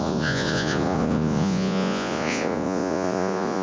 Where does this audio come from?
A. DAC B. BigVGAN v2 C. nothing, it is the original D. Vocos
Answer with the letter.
D